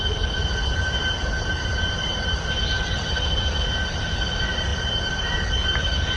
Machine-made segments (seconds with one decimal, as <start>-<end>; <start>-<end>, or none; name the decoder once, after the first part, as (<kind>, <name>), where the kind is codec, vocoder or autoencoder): none